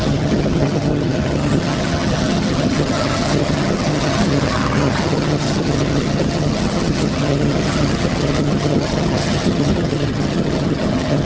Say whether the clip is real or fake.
fake